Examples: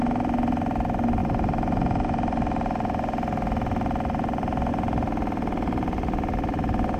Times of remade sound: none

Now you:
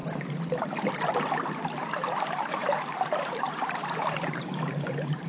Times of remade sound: 0.0-0.5 (vocoder, BigVGAN v2); 2.6-5.3

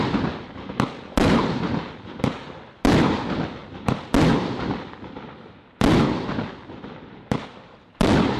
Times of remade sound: 3.6-4.1 (vocoder, BigVGAN v2)

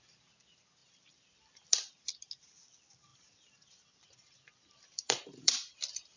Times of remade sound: 0.8-1.9 (vocoder, BigVGAN v2); 3.1-6.2

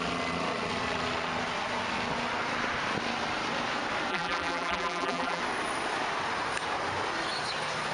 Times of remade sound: 4.1-5.4 (vocoder, BigVGAN v2)

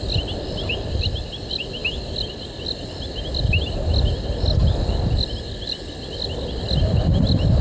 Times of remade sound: 0.0-1.8 (vocoder, BigVGAN v2); 5.4-7.6

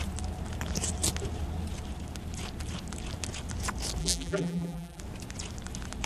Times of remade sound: 4.0-5.0 (vocoder, BigVGAN v2)

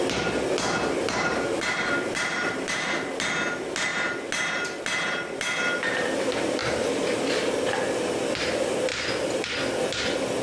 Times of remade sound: 1.3-3.1 (vocoder, BigVGAN v2); 6.6-7.7